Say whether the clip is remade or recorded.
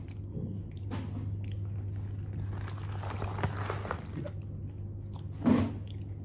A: recorded